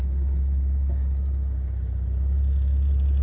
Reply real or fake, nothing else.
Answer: real